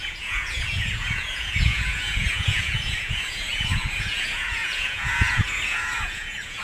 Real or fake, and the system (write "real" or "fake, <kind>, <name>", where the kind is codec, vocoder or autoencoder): fake, vocoder, Vocos